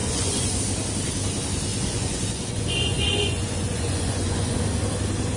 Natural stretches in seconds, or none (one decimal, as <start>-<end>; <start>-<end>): 0.6-1.7; 4.6-5.4